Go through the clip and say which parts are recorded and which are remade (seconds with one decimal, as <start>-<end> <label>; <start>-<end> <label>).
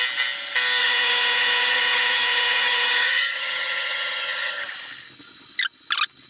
0.0-0.8 recorded; 0.8-4.6 remade; 4.6-6.3 recorded